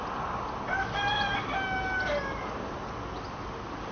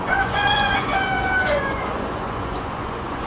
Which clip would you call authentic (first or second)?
first